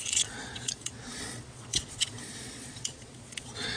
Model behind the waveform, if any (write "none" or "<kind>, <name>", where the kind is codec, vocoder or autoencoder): vocoder, Vocos